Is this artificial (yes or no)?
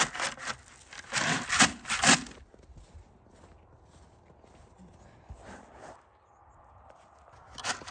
no